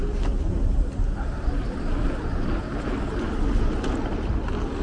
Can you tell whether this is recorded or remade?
recorded